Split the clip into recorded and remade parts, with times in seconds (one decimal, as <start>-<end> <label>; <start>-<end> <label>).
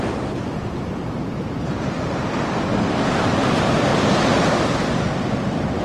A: 0.0-5.8 recorded